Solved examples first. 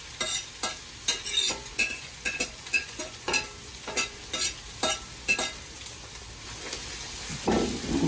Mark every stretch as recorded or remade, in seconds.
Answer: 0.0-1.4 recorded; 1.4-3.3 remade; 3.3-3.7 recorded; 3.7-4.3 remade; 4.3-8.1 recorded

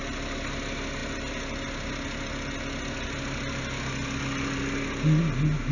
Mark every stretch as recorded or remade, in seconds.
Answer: 0.0-5.7 recorded

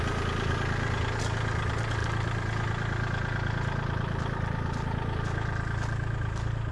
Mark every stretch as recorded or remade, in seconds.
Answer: 0.0-6.7 recorded

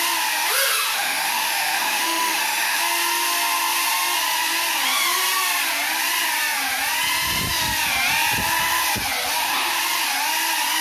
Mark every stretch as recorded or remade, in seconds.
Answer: 0.0-1.0 recorded; 1.0-2.8 remade; 2.8-10.8 recorded

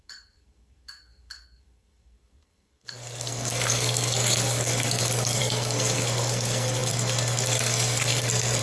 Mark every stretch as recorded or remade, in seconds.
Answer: 0.0-8.6 remade

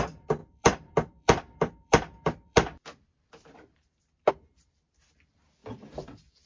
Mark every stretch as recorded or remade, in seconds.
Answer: 0.0-0.4 recorded; 0.4-4.3 remade; 4.3-5.6 recorded; 5.6-6.5 remade